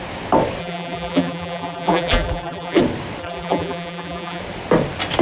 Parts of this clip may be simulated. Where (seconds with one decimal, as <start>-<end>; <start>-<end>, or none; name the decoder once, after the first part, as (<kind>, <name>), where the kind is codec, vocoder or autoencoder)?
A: 0.6-2.8 (vocoder, BigVGAN v2); 3.2-4.4